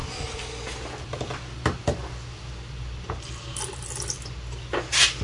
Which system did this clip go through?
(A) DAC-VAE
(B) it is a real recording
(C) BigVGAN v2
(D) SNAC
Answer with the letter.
B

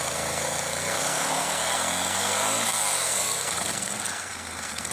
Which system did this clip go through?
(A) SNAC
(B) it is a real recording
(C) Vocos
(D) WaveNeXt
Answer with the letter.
A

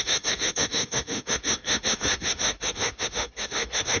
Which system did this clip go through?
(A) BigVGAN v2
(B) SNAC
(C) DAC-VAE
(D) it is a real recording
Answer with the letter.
C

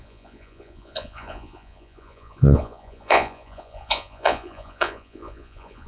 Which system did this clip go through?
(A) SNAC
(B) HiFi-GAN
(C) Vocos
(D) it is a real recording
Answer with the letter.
C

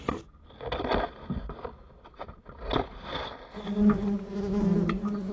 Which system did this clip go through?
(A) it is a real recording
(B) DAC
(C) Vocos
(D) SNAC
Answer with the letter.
A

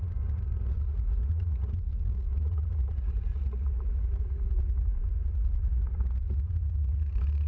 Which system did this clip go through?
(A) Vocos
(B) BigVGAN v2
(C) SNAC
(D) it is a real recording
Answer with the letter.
A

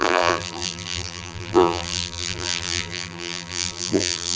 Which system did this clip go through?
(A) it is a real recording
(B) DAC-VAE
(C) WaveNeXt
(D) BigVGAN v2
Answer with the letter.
D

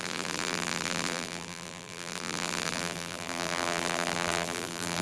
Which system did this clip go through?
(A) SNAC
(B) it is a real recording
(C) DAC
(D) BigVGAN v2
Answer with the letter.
D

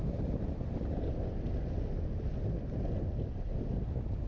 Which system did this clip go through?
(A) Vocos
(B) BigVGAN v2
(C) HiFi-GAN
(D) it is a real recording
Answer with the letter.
D